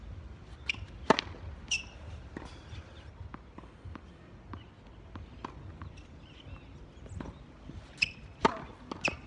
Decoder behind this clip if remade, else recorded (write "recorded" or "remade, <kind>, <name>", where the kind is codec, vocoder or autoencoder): recorded